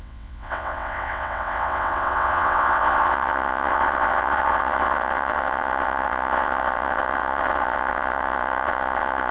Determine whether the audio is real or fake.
fake